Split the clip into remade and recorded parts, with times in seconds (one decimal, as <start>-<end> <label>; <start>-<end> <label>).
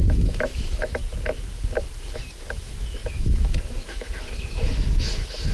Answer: 0.0-1.0 remade; 1.0-2.5 recorded; 2.5-5.5 remade